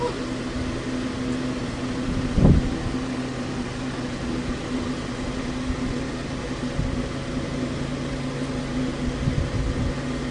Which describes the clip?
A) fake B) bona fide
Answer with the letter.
B